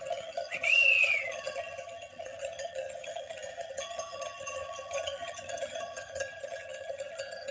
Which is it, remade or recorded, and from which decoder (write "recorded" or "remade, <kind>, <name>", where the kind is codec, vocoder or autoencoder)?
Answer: remade, vocoder, HiFi-GAN